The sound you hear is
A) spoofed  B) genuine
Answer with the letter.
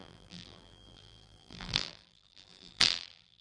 A